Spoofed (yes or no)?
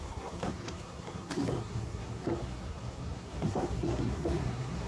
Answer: yes